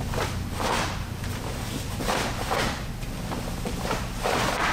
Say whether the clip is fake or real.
fake